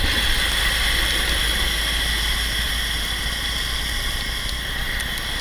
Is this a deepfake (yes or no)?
no